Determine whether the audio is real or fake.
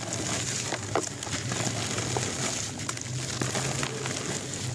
real